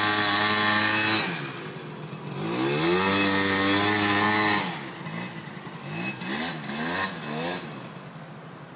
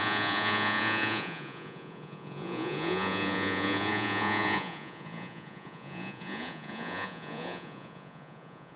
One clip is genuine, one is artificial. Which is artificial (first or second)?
second